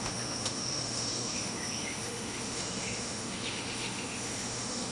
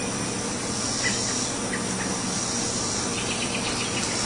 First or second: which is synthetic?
first